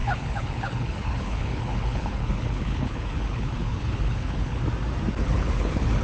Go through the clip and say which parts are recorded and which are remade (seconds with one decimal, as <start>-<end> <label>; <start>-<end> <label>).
0.0-4.6 remade; 4.6-5.2 recorded; 5.2-6.0 remade